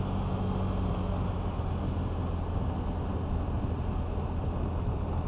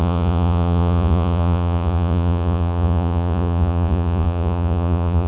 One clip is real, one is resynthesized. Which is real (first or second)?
first